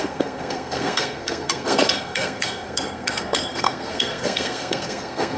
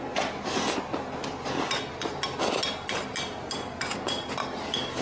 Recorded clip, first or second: second